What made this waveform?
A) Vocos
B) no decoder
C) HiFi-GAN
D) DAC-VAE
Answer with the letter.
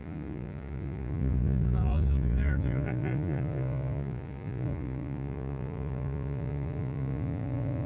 A